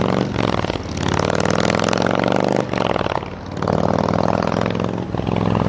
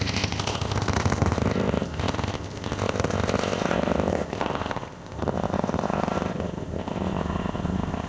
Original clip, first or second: first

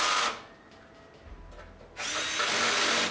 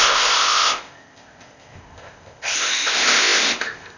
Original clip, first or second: first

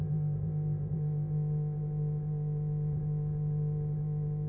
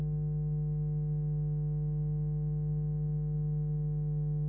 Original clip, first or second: second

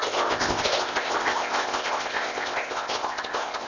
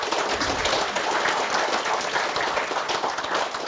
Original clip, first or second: second